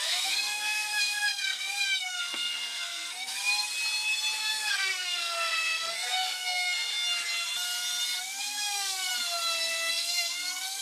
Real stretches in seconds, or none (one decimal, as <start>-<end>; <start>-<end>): 3.4-4.4; 6.9-8.4; 9.1-9.9

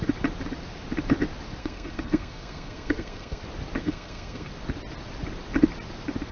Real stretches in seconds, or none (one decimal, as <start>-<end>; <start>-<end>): 0.0-1.6; 3.4-3.8; 4.5-6.3

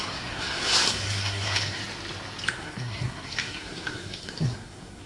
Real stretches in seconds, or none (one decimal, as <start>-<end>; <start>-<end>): 1.8-2.5

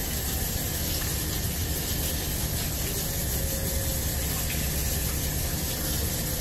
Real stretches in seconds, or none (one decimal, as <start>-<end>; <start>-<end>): 0.0-6.4

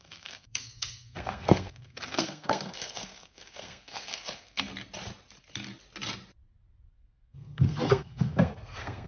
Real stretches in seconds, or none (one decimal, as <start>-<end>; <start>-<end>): 4.7-6.9

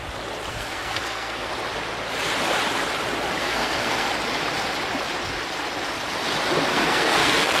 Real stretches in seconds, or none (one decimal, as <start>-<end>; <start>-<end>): 0.0-0.5; 1.5-3.4; 4.1-6.7

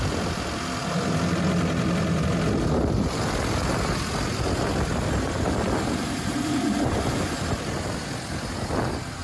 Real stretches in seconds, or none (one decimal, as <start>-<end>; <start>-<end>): 0.0-9.2